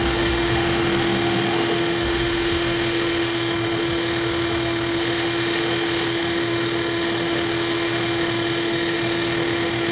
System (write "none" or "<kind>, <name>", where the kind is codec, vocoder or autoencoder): autoencoder, DAC-VAE